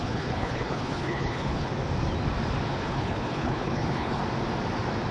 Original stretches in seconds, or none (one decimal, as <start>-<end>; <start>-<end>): 1.7-2.8; 4.2-5.1